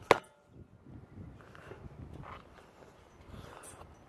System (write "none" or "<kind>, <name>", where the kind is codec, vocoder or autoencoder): none